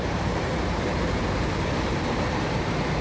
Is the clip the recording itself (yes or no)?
no